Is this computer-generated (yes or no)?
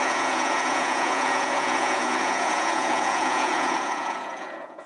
yes